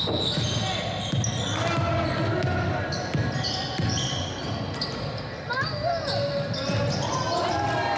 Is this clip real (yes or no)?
yes